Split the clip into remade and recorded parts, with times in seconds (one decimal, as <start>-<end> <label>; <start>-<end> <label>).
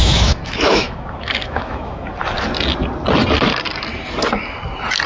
0.0-2.1 remade; 2.1-5.1 recorded